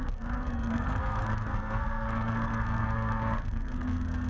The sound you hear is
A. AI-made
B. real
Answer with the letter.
A